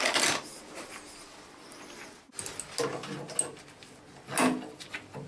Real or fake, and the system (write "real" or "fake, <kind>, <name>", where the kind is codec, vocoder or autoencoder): real